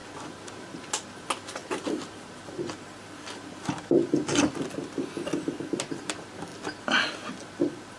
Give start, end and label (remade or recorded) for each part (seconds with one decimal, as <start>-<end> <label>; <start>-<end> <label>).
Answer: 0.0-1.6 recorded; 1.6-4.7 remade; 4.7-8.0 recorded